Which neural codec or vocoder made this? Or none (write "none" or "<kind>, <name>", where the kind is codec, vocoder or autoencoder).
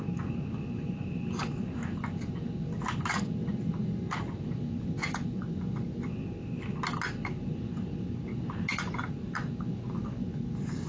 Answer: none